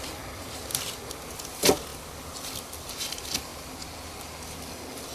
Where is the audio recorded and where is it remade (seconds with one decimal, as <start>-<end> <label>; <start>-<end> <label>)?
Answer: 0.0-0.7 recorded; 0.7-1.3 remade; 1.3-5.1 recorded